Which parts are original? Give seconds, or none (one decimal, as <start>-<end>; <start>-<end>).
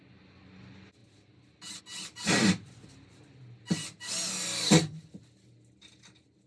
0.0-6.5